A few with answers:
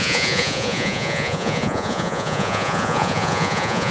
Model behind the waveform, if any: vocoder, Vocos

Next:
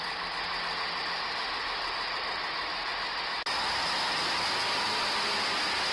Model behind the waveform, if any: none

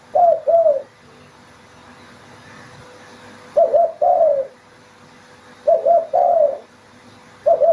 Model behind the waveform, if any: none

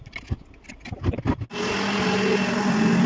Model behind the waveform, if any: none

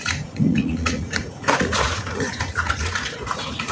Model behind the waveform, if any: vocoder, Vocos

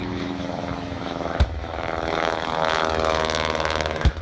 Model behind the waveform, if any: autoencoder, DAC-VAE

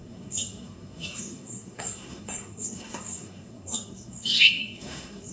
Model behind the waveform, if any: codec, SNAC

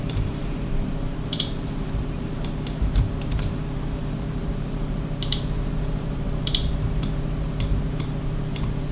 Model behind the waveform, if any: vocoder, BigVGAN v2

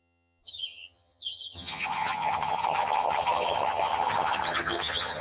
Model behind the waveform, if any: vocoder, HiFi-GAN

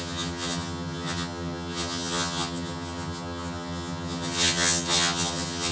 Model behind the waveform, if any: vocoder, HiFi-GAN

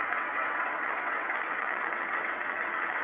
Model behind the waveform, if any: vocoder, WaveNeXt